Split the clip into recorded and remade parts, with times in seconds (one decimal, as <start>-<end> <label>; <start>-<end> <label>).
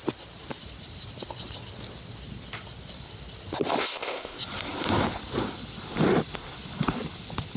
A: 0.0-3.8 recorded; 3.8-4.4 remade; 4.4-7.6 recorded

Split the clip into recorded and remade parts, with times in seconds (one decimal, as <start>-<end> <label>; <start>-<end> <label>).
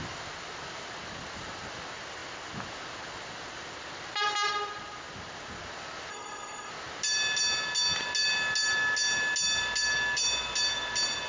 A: 0.0-6.1 recorded; 6.1-6.7 remade; 6.7-11.3 recorded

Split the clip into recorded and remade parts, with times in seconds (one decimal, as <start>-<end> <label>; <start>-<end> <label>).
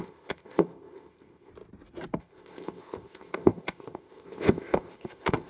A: 0.0-1.5 remade; 1.5-2.2 recorded; 2.2-5.5 remade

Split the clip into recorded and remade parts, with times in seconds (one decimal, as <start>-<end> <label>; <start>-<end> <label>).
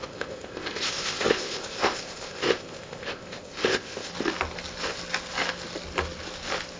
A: 0.0-4.1 remade; 4.1-6.8 recorded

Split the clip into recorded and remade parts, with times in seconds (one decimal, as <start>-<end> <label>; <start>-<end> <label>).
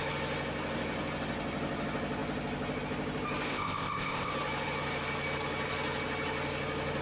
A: 0.0-3.5 recorded; 3.5-4.3 remade; 4.3-7.0 recorded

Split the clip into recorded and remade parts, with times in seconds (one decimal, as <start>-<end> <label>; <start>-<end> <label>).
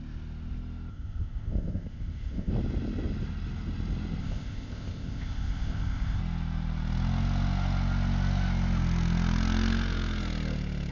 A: 0.0-0.9 recorded; 0.9-2.5 remade; 2.5-4.2 recorded; 4.2-6.2 remade; 6.2-10.9 recorded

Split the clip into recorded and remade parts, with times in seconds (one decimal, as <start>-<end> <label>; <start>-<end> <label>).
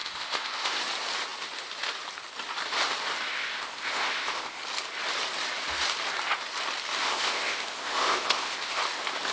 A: 0.0-0.8 remade; 0.8-3.3 recorded; 3.3-4.6 remade; 4.6-7.0 recorded; 7.0-8.8 remade; 8.8-9.3 recorded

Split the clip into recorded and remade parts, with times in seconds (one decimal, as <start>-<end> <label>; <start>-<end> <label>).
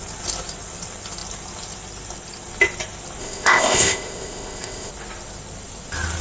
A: 0.0-3.2 recorded; 3.2-4.9 remade; 4.9-6.2 recorded